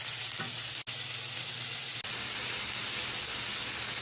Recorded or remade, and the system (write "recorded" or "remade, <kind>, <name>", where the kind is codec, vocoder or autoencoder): recorded